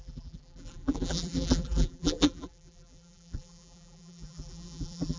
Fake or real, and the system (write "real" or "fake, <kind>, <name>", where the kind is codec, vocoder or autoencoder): fake, vocoder, BigVGAN v2